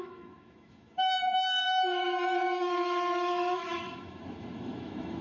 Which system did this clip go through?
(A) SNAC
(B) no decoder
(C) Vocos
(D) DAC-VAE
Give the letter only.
D